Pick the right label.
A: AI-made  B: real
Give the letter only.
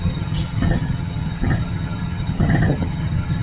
A